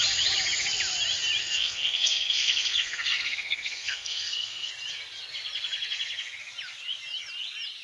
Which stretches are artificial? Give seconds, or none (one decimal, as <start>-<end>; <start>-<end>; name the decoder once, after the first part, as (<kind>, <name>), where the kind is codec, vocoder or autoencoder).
1.4-4.7 (codec, SNAC)